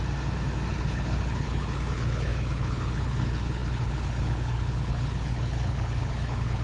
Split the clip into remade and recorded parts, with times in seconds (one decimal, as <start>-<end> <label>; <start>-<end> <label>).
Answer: 0.0-0.7 recorded; 0.7-6.6 remade